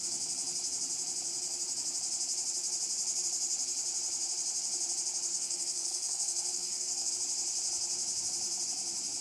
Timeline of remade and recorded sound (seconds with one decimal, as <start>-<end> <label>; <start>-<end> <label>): 0.0-5.3 recorded; 5.3-7.1 remade; 7.1-9.2 recorded